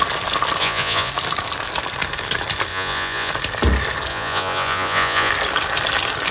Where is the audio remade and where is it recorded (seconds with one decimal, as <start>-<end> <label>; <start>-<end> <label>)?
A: 0.0-0.6 recorded; 0.6-1.1 remade; 1.1-2.7 recorded; 2.7-3.3 remade; 3.3-4.1 recorded; 4.1-5.3 remade; 5.3-6.3 recorded